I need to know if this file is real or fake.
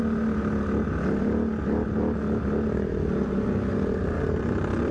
real